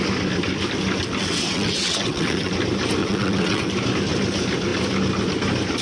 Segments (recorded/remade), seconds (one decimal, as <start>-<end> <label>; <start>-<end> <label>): 0.0-1.2 recorded; 1.2-2.5 remade; 2.5-3.0 recorded; 3.0-3.7 remade; 3.7-5.8 recorded